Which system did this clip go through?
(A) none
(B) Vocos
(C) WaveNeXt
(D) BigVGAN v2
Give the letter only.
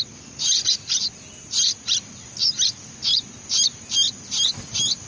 A